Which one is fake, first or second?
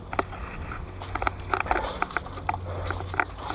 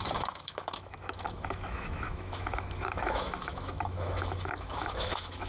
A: second